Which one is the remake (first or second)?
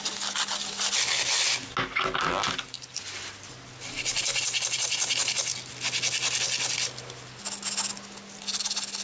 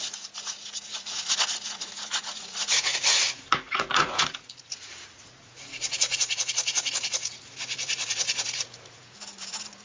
second